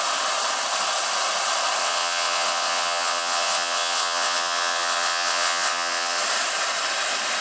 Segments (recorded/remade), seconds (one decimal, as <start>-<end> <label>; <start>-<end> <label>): 0.0-1.8 recorded; 1.8-6.2 remade; 6.2-7.4 recorded